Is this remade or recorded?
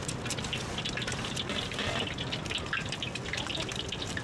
remade